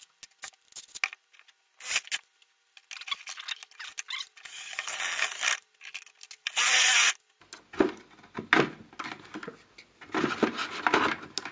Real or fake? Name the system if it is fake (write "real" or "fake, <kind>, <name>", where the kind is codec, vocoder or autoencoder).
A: real